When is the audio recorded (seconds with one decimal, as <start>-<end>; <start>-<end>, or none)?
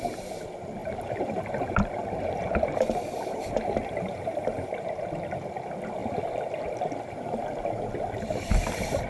0.0-0.8; 5.1-9.1